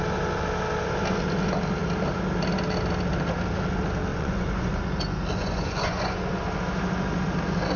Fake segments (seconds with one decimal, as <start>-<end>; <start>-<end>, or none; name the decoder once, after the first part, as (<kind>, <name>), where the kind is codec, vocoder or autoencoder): 4.1-4.8 (vocoder, Vocos); 5.4-6.4